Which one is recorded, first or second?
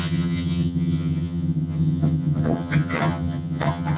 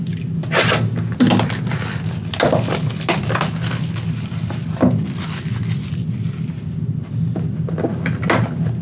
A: second